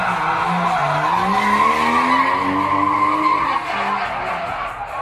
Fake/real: real